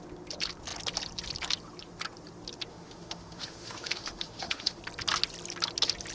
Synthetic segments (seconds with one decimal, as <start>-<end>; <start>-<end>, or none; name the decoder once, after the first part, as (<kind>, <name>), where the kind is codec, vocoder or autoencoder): 2.7-4.8 (autoencoder, DAC-VAE)